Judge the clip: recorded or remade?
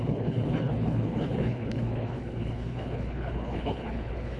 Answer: remade